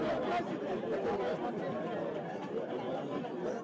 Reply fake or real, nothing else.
real